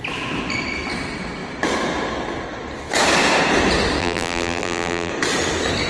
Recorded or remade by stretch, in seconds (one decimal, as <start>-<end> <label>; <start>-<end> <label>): 0.0-4.0 recorded; 4.0-5.1 remade; 5.1-5.9 recorded